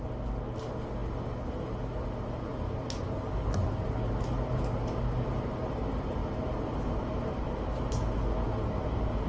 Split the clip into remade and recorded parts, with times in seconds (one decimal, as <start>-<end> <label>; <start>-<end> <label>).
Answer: 0.0-9.3 recorded